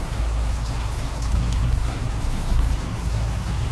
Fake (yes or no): yes